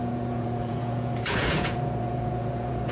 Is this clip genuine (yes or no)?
no